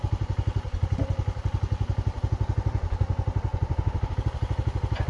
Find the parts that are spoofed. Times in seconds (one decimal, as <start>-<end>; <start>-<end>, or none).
3.5-4.1

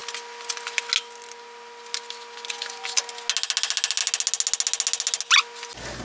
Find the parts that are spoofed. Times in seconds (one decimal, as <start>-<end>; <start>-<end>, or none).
none

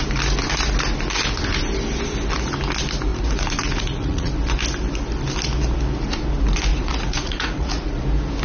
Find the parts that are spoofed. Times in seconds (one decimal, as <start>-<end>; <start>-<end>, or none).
3.1-4.3; 6.7-8.0

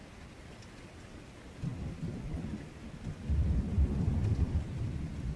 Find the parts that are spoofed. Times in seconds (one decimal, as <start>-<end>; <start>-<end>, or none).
none

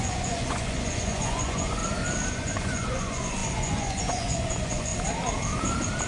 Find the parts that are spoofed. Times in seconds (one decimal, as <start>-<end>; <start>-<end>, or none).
0.0-1.8; 2.3-4.9

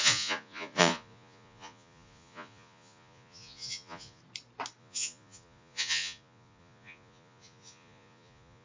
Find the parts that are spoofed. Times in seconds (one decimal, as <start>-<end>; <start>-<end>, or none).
0.0-4.2; 4.8-8.6